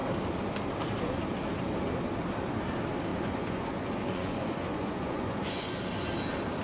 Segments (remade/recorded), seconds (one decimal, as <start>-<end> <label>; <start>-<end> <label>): 0.0-3.1 recorded; 3.1-5.8 remade; 5.8-6.6 recorded